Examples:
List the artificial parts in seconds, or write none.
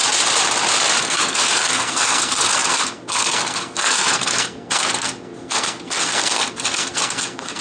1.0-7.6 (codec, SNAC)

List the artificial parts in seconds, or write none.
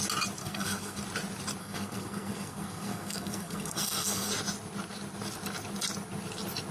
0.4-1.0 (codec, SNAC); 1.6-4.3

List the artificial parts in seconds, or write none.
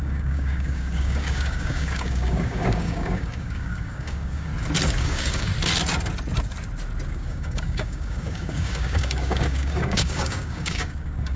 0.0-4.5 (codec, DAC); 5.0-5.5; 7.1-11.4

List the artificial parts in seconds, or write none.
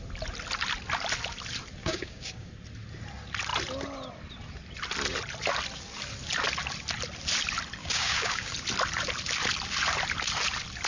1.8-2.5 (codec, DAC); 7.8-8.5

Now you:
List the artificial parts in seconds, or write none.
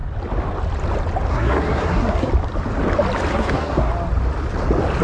1.3-2.3 (codec, SNAC); 3.3-3.9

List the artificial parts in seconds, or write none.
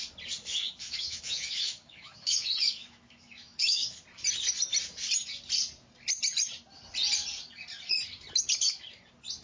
0.4-4.0 (autoencoder, DAC-VAE)